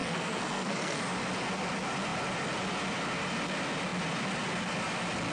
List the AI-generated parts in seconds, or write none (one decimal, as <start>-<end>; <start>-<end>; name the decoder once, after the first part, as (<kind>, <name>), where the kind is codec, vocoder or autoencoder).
0.0-1.0 (codec, SNAC)